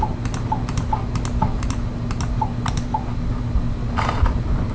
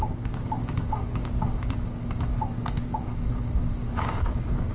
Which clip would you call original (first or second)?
first